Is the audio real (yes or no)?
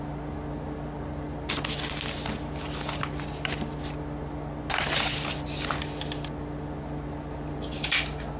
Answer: yes